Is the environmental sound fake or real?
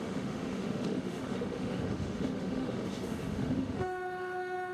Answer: fake